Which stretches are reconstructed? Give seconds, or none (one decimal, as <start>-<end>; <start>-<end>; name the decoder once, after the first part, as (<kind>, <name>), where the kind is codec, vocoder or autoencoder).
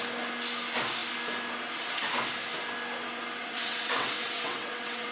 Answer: 3.4-5.1 (vocoder, WaveNeXt)